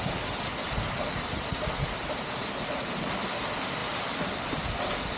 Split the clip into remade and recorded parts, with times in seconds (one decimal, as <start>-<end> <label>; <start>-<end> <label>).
0.0-5.2 recorded